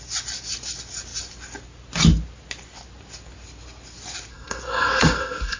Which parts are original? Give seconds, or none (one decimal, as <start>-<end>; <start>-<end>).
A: 0.0-4.3